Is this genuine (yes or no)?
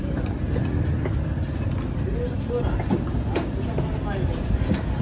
yes